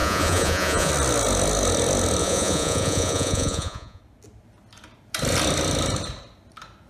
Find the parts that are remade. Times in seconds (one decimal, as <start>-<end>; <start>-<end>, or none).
0.0-0.9; 2.2-4.0